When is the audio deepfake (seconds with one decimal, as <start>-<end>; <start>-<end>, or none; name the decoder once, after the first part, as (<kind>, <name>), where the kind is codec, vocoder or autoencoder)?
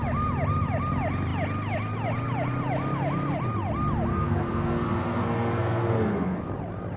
4.1-6.4 (codec, SNAC)